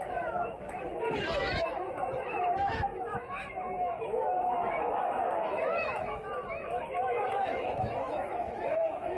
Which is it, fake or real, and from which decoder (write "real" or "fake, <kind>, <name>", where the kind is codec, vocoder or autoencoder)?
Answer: fake, autoencoder, DAC-VAE